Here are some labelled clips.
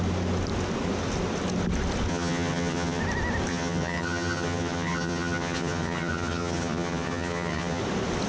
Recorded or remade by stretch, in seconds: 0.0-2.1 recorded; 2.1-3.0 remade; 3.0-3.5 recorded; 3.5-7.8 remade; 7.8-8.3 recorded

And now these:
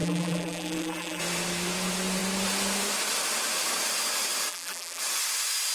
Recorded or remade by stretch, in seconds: 0.0-1.2 remade; 1.2-4.5 recorded; 4.5-5.0 remade; 5.0-5.7 recorded

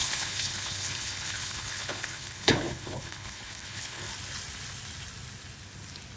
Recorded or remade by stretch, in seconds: 0.0-4.1 remade; 4.1-6.2 recorded

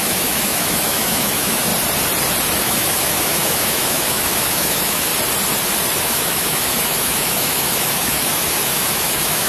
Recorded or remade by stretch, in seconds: 0.0-1.7 remade; 1.7-2.6 recorded; 2.6-5.1 remade; 5.1-6.0 recorded; 6.0-9.5 remade

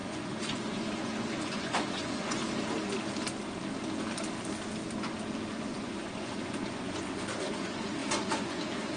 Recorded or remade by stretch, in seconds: 0.0-2.4 remade; 2.4-5.5 recorded; 5.5-9.0 remade